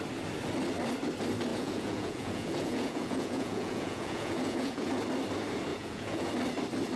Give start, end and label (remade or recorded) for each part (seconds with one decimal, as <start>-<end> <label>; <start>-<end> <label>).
0.0-1.5 recorded; 1.5-4.9 remade; 4.9-5.7 recorded; 5.7-6.3 remade; 6.3-7.0 recorded